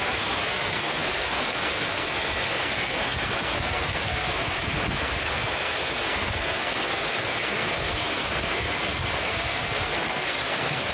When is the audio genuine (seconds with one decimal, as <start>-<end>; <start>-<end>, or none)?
none